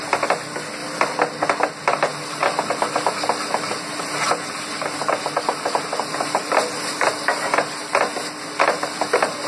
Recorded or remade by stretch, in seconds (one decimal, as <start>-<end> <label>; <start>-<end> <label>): 0.0-9.5 recorded